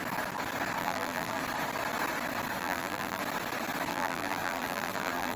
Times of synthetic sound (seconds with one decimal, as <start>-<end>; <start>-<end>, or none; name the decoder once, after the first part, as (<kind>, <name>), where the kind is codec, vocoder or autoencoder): 0.8-1.4 (vocoder, BigVGAN v2); 2.6-3.2; 3.9-5.4